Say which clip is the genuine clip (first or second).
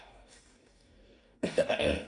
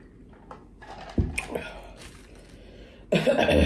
second